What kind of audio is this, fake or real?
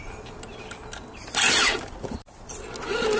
real